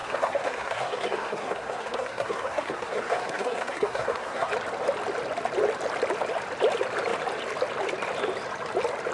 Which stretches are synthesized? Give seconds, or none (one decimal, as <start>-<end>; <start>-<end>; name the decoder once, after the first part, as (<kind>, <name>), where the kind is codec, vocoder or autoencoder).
0.0-4.5 (codec, SNAC)

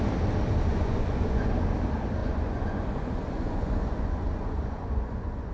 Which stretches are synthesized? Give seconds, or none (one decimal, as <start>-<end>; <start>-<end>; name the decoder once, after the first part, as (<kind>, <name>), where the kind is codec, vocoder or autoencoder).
0.7-1.5 (vocoder, Vocos); 2.2-5.5

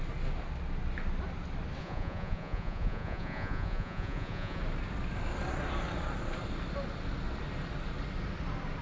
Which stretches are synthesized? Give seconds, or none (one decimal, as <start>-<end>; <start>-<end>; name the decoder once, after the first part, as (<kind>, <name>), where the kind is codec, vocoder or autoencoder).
1.8-4.6 (vocoder, Vocos)

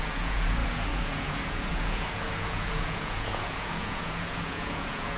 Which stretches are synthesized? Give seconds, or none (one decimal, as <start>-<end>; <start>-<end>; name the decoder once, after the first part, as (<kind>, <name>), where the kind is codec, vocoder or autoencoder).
0.0-5.2 (vocoder, Vocos)